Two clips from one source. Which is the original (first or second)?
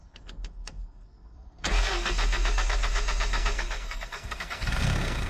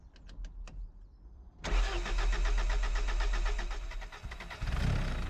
second